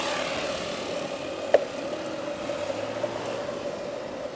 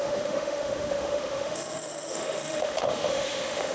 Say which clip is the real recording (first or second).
first